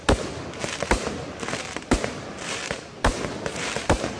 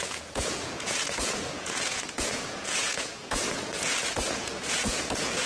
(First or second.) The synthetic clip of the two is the second